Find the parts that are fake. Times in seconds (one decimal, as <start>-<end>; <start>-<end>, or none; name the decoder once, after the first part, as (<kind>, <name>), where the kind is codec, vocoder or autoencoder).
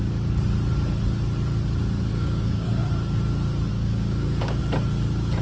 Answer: 2.1-2.8 (codec, DAC); 3.7-4.6